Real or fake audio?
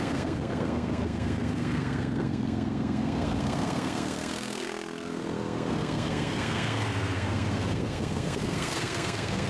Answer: fake